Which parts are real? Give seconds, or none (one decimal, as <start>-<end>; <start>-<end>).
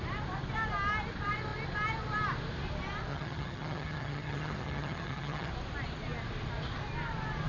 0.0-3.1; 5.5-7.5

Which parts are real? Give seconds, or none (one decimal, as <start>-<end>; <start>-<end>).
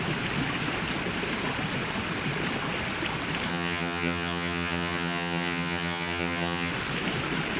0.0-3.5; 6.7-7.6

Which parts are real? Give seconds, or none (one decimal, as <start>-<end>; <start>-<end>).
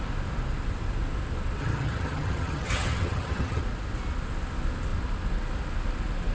0.0-1.6; 3.6-6.3